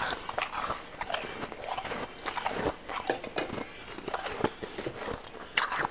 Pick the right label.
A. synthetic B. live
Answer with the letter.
B